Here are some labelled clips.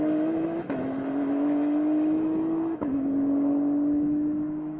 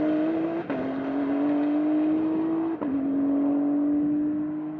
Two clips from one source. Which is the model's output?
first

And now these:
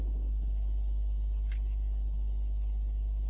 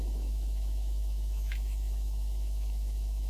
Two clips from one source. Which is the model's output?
second